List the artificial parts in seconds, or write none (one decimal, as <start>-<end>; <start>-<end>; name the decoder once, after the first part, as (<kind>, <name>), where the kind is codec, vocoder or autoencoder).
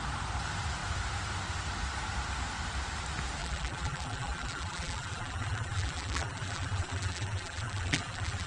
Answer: 3.4-8.5 (vocoder, BigVGAN v2)